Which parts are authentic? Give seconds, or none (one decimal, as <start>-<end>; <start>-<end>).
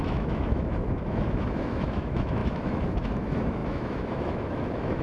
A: none